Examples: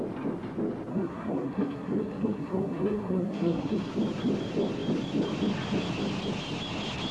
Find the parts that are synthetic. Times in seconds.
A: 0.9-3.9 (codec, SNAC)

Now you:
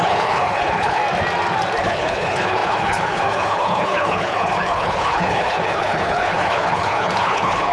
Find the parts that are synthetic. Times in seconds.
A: 0.0-1.0 (codec, HILCodec); 1.8-7.7

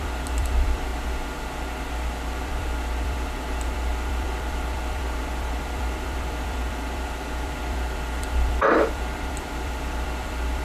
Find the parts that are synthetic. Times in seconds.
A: 0.0-0.9 (vocoder, BigVGAN v2); 2.4-10.6

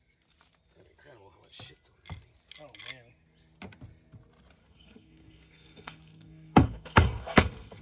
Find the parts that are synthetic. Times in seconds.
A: 4.6-7.8 (codec, SNAC)